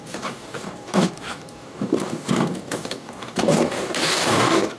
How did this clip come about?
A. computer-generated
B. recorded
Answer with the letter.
A